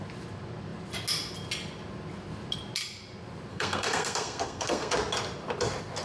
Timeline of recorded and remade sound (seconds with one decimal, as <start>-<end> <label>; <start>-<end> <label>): 0.0-3.5 recorded; 3.5-4.9 remade; 4.9-6.0 recorded